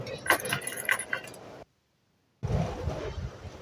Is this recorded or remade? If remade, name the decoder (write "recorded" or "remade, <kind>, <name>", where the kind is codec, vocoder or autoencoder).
recorded